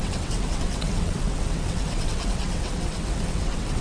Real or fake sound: fake